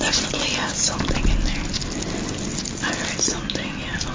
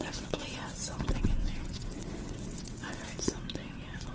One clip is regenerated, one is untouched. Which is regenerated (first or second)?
second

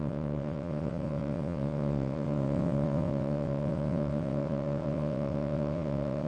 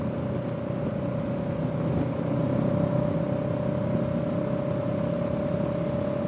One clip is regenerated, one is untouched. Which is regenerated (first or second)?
first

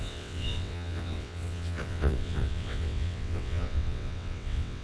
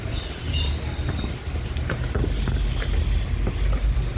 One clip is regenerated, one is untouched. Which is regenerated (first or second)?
first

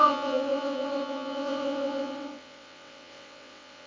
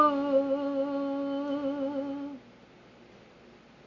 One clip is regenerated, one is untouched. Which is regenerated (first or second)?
first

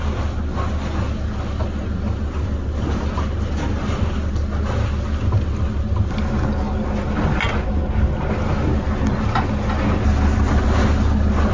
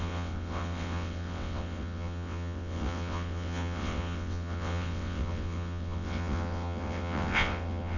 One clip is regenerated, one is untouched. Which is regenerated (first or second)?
second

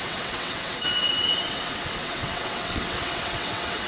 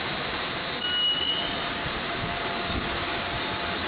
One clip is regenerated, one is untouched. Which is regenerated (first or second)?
first